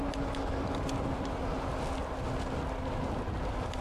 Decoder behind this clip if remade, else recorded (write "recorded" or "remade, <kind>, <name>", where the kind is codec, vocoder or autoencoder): recorded